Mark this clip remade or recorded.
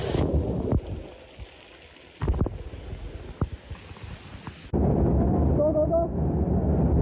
recorded